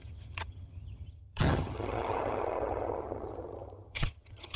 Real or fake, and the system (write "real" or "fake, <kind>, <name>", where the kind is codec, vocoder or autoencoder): fake, vocoder, HiFi-GAN